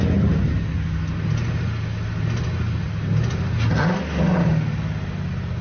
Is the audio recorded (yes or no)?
yes